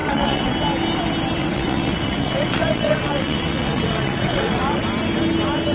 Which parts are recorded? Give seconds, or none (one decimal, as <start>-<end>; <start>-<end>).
0.5-1.4; 4.8-5.7